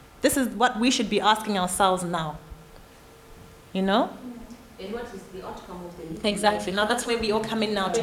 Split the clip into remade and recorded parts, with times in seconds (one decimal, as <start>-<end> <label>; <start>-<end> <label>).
0.0-6.0 recorded; 6.0-7.1 remade; 7.1-8.0 recorded